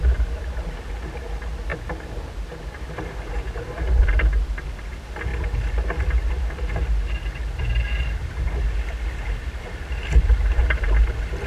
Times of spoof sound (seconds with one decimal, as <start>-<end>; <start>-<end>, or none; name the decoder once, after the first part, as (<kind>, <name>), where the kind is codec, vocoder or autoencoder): none